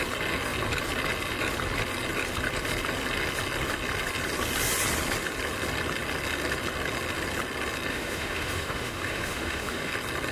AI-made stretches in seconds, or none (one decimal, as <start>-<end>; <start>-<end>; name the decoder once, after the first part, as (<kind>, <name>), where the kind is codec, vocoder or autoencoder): 7.9-9.9 (autoencoder, DAC-VAE)